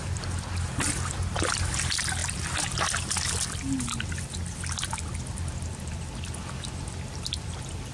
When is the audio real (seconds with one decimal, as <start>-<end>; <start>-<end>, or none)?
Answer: 0.0-7.9